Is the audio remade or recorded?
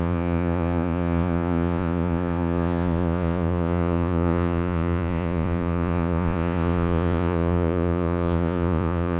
remade